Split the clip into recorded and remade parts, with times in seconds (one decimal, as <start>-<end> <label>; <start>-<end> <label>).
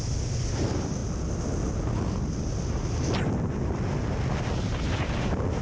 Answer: 0.0-5.6 recorded